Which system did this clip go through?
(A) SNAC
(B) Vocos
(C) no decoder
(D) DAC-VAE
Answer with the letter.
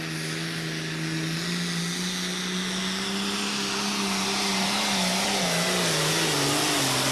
C